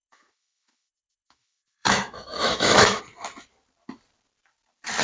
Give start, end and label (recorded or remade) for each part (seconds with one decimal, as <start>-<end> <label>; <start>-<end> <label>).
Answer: 0.0-3.0 remade; 3.0-5.0 recorded